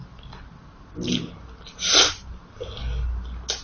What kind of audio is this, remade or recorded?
recorded